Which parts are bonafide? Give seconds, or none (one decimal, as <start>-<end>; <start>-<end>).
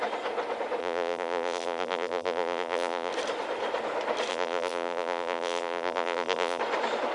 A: 0.0-0.8; 3.1-4.3; 6.6-7.1